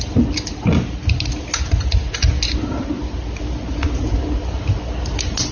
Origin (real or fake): real